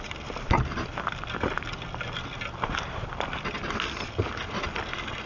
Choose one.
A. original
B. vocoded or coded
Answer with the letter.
A